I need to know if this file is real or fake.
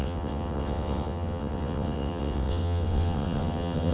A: fake